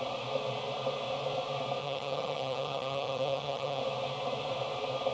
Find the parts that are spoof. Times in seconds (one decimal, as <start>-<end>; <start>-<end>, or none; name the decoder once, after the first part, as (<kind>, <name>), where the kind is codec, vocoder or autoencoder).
1.8-3.8 (vocoder, HiFi-GAN)